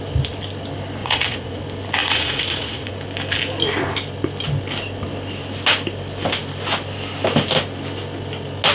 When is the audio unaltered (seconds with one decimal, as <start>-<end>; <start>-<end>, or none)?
0.0-1.0; 1.6-2.0; 2.9-8.7